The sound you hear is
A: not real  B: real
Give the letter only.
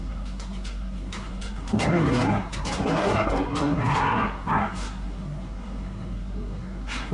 A